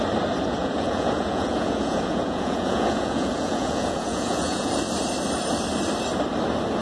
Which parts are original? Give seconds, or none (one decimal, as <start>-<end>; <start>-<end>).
0.0-0.6; 4.7-6.8